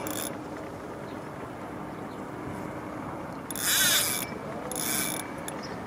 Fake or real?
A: real